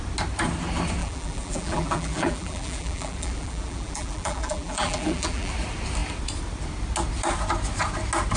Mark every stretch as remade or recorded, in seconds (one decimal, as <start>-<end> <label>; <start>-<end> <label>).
0.0-1.0 recorded; 1.0-5.5 remade; 5.5-8.4 recorded